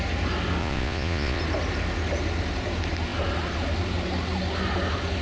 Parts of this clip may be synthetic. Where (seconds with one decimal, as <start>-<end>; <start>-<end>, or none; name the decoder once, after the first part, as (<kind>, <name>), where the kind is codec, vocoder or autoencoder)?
0.6-1.4 (vocoder, Vocos)